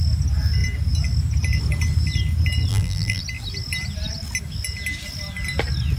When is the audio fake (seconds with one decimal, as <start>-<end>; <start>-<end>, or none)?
2.7-3.2